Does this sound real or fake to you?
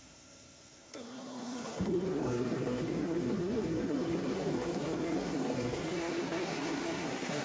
fake